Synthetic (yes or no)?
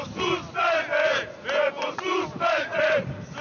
yes